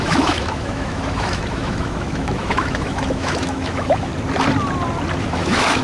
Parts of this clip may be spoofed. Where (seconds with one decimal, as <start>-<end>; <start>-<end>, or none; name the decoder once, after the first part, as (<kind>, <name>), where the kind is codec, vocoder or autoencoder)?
0.0-4.1 (autoencoder, DAC-VAE); 5.2-5.8